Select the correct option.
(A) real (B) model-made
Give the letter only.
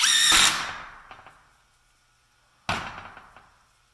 A